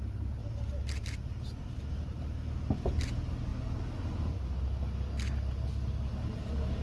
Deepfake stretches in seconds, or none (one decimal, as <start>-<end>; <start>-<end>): none